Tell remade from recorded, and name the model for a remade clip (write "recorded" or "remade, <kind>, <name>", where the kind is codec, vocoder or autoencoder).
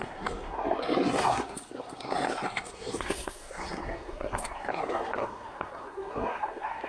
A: remade, codec, SNAC